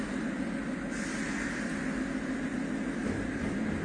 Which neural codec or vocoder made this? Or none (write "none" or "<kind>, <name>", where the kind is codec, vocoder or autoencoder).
none